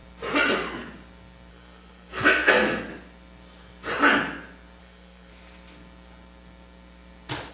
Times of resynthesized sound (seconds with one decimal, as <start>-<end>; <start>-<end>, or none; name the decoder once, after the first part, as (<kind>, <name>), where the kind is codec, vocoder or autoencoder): 1.5-2.9 (codec, SNAC); 4.8-5.3